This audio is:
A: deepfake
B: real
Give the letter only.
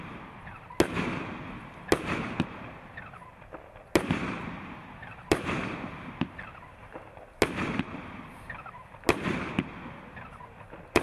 B